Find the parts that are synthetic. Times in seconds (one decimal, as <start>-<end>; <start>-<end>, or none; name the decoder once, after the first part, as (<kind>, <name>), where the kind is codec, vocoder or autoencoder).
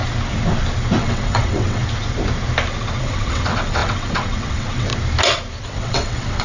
1.0-1.8 (vocoder, WaveNeXt); 3.0-4.9; 5.6-6.4